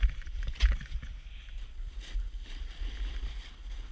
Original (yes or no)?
yes